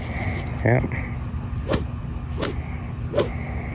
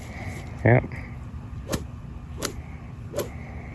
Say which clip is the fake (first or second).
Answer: second